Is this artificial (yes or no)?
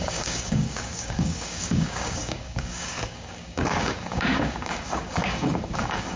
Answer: yes